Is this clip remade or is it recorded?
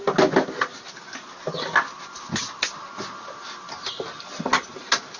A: recorded